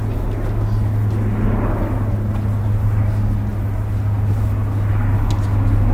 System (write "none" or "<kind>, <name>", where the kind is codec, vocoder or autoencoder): none